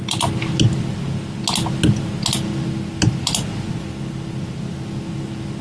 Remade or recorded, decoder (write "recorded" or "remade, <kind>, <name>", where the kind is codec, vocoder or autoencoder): recorded